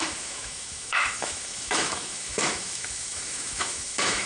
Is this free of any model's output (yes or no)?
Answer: no